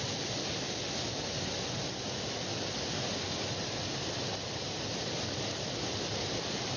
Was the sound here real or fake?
real